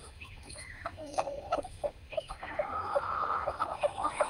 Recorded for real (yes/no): no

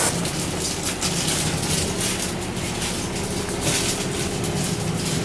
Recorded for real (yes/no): yes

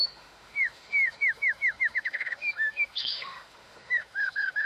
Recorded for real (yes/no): no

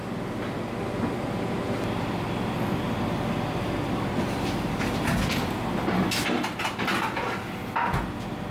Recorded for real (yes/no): yes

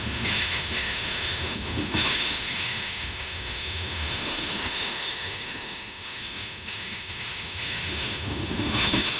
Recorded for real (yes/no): no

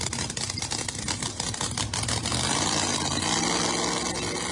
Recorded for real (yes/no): yes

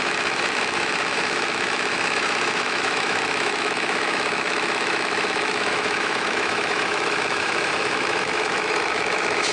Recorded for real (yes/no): no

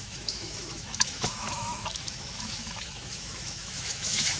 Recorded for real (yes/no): no